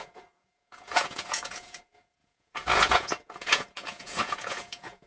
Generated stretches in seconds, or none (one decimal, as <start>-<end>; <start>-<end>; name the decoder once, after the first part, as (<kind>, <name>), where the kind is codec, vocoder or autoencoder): 0.0-5.1 (vocoder, Vocos)